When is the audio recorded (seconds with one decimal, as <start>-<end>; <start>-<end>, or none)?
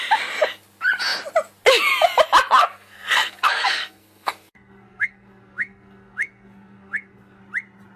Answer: 0.0-2.6; 7.4-8.0